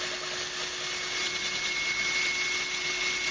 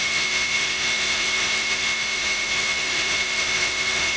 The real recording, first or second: first